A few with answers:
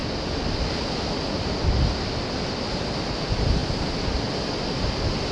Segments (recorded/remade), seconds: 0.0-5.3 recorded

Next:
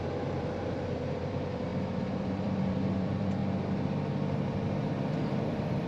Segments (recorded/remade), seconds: 0.0-1.7 remade; 1.7-2.2 recorded; 2.2-3.4 remade; 3.4-5.1 recorded; 5.1-5.9 remade

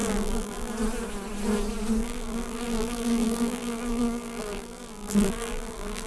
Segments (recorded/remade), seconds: 0.0-0.7 remade; 0.7-2.0 recorded; 2.0-6.1 remade

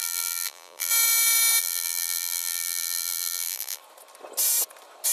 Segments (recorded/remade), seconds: 0.0-0.9 remade; 0.9-1.6 recorded; 1.6-3.8 remade; 3.8-5.1 recorded

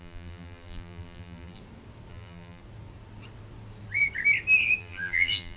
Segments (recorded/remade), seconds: 0.0-1.6 remade; 1.6-2.1 recorded; 2.1-2.6 remade; 2.6-4.8 recorded; 4.8-5.6 remade

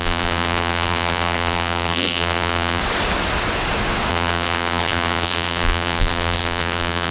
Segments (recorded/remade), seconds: 0.0-2.8 remade; 2.8-4.1 recorded; 4.1-7.1 remade

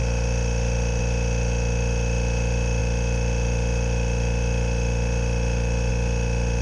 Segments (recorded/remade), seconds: 0.0-1.0 remade; 1.0-2.8 recorded; 2.8-5.9 remade; 5.9-6.6 recorded